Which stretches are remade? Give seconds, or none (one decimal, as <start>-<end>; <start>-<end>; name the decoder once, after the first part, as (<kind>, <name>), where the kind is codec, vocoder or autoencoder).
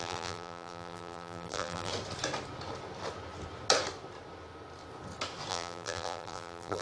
0.0-1.9 (vocoder, BigVGAN v2); 5.5-6.8